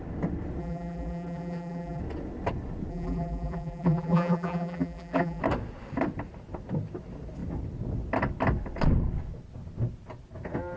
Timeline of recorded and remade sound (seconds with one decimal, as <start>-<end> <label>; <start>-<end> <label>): 0.0-0.6 recorded; 0.6-2.0 remade; 2.0-2.9 recorded; 2.9-5.4 remade; 5.4-10.8 recorded